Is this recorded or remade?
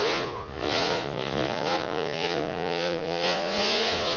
remade